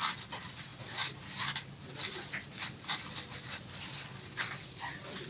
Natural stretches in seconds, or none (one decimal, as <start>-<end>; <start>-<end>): 0.0-5.3